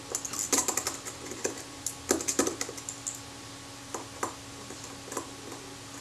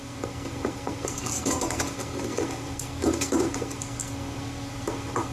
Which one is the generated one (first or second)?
second